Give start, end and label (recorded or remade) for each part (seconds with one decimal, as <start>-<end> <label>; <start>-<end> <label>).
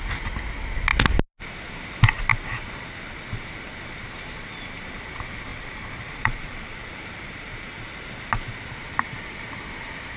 0.0-5.5 recorded; 5.5-7.8 remade; 7.8-10.2 recorded